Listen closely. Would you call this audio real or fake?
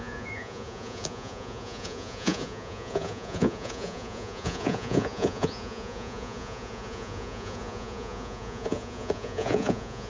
fake